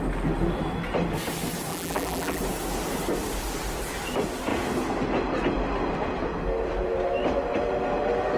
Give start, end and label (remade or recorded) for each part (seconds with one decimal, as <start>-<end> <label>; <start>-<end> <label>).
0.0-1.7 recorded; 1.7-2.4 remade; 2.4-8.4 recorded